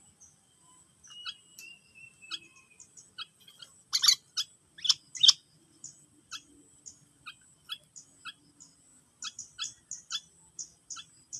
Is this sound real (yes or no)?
yes